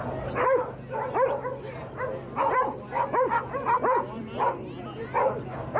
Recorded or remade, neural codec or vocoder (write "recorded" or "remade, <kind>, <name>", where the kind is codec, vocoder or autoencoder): recorded